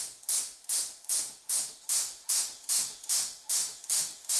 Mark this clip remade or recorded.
remade